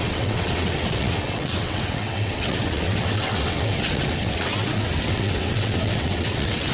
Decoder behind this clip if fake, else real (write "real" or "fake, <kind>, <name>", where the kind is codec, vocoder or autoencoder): fake, vocoder, WaveNeXt